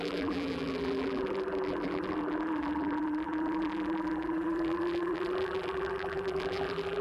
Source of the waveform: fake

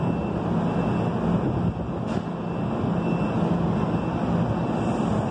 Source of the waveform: real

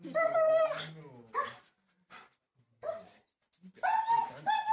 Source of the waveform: fake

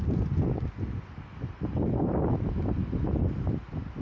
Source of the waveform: real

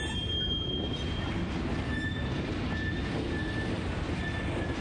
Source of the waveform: real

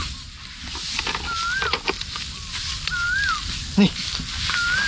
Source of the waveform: real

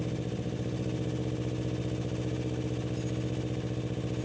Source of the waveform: real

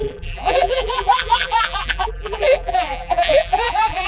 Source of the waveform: fake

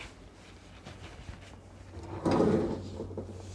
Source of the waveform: real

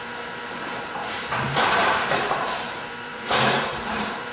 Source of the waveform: fake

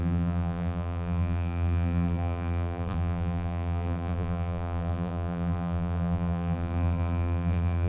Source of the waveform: fake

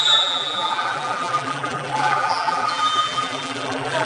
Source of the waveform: fake